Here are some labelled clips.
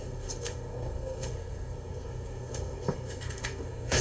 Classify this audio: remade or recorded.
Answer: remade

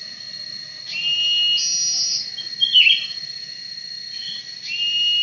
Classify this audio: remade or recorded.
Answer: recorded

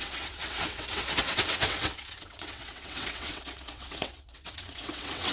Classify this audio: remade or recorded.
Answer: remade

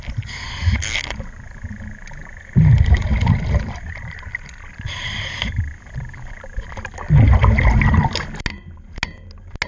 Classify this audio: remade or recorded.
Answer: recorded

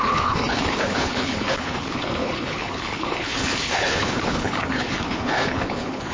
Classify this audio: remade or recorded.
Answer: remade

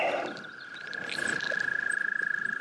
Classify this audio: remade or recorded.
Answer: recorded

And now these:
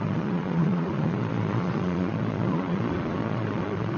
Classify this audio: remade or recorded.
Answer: remade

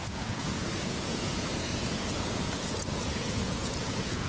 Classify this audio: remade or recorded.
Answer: remade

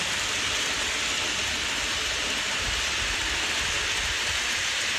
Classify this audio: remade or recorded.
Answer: recorded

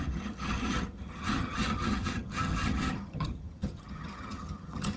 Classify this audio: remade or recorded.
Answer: remade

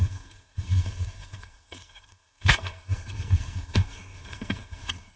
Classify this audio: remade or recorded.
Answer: remade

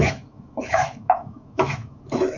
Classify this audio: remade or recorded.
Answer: remade